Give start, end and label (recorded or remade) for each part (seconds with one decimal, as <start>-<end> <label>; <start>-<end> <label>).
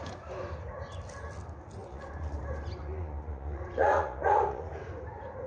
0.0-1.8 recorded; 1.8-2.4 remade; 2.4-2.8 recorded; 2.8-4.9 remade; 4.9-5.5 recorded